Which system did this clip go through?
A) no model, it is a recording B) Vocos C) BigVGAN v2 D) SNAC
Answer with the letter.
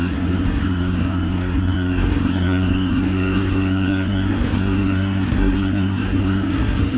D